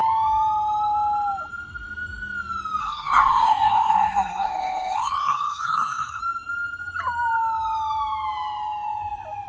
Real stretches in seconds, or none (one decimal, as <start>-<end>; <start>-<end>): 0.0-2.8; 6.2-9.5